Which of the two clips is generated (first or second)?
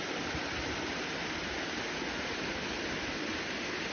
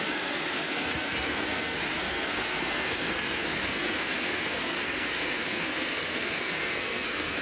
second